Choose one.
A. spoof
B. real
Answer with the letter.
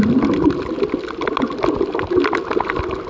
B